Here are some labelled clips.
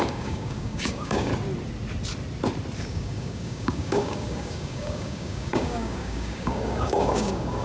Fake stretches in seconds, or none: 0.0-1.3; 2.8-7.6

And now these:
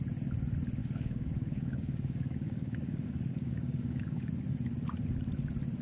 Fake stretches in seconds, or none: 0.8-4.3

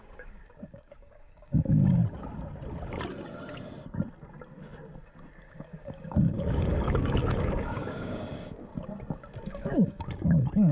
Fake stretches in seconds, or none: 0.0-2.0; 5.4-8.7; 9.5-10.7

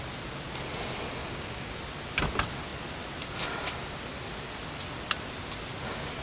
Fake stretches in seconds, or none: 1.2-1.8

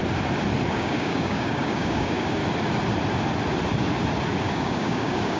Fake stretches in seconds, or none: 0.7-2.4; 4.4-5.4

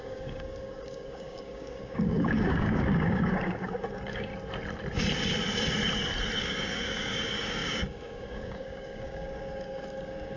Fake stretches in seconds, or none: 0.0-4.3; 6.4-10.4

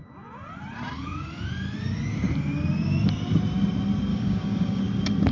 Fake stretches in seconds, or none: 4.1-4.8